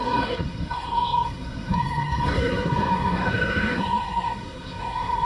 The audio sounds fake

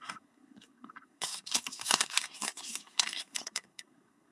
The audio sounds fake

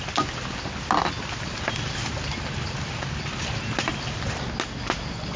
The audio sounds real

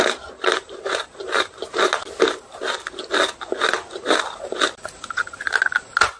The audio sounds real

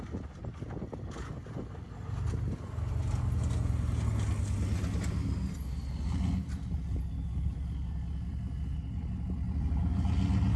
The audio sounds real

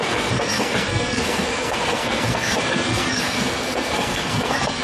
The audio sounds fake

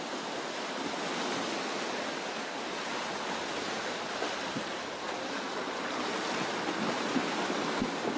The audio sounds real